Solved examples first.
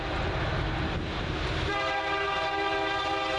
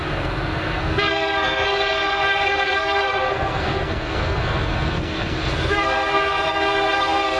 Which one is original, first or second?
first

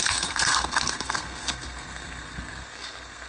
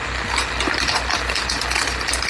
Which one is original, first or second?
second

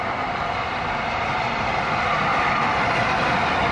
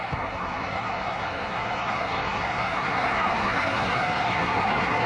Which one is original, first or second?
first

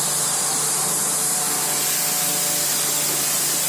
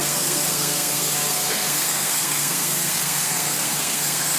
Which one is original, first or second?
first